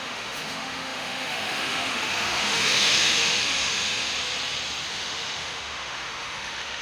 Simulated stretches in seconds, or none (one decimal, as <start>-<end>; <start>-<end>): 0.0-4.1; 4.9-6.8